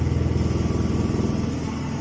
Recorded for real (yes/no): yes